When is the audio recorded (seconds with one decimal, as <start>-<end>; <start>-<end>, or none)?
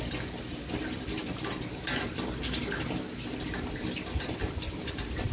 0.0-5.3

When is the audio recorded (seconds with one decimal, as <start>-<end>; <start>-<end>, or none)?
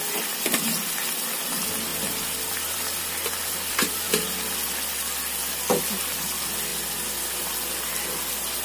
0.0-8.6